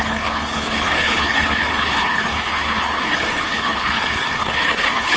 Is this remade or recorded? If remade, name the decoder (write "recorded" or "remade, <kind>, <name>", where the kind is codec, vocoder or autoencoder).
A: remade, codec, HILCodec